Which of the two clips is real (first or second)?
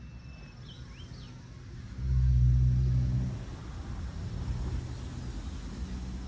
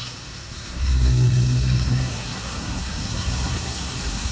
first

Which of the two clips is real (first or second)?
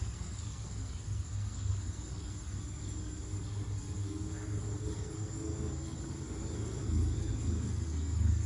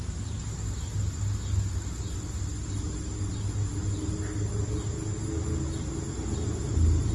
second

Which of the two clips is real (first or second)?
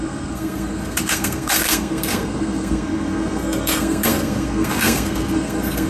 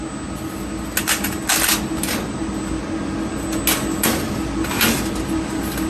second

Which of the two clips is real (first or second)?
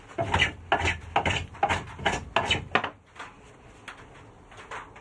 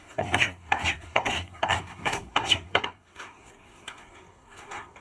first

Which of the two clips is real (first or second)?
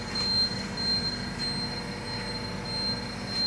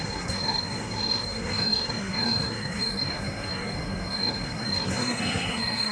first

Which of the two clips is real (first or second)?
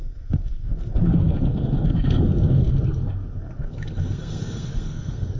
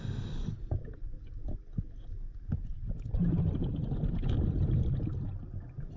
second